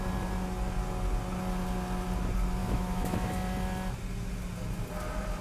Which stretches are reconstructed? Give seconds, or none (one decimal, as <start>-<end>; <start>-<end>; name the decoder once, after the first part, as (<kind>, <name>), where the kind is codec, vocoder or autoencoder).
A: 2.6-3.3 (autoencoder, DAC-VAE)